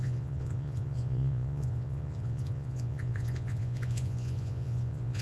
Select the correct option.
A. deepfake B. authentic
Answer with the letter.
A